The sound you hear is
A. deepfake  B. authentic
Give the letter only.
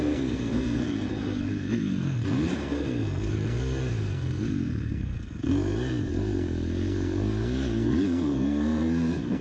A